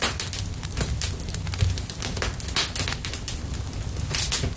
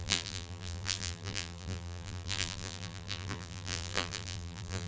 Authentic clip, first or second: first